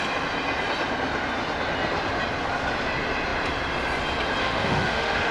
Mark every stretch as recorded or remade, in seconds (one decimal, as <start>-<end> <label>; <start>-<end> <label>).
0.0-4.4 recorded; 4.4-5.3 remade